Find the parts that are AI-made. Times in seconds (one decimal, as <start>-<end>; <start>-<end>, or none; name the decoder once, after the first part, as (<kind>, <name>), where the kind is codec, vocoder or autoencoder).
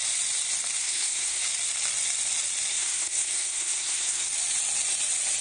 0.8-1.4 (codec, SNAC); 2.7-4.3